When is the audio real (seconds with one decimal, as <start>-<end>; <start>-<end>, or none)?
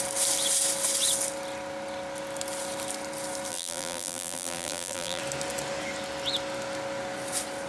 0.0-3.5; 5.2-7.7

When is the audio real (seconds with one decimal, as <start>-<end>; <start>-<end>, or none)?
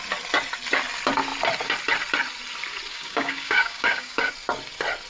0.0-2.9; 4.3-5.1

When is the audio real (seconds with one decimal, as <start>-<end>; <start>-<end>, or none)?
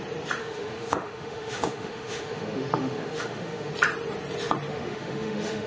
0.0-0.4; 3.7-4.7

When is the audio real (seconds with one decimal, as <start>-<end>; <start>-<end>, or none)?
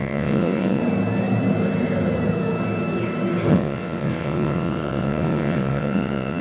0.8-3.5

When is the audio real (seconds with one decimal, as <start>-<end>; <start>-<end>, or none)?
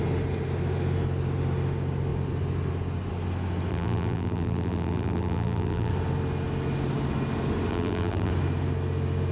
0.0-3.7; 5.9-7.7; 8.3-9.3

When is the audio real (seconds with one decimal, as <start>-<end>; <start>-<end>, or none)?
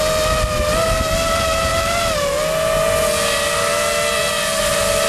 0.0-5.1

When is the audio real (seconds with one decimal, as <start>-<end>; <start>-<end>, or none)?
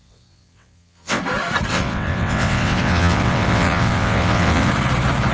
1.2-1.7; 4.7-5.3